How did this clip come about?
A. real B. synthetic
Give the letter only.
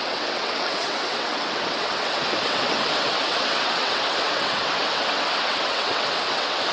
B